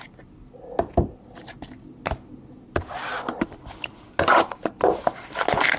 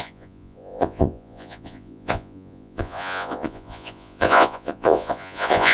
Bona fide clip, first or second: first